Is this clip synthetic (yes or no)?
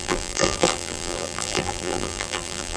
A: yes